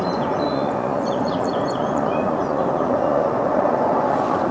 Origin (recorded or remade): remade